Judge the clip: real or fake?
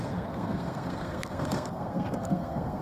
fake